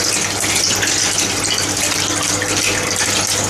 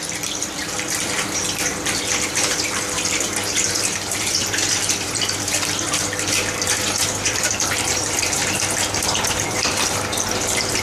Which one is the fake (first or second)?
second